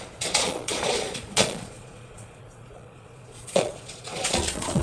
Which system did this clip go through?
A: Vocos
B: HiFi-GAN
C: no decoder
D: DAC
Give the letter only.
A